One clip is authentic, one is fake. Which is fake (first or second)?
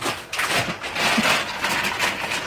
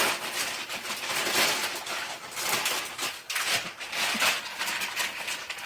second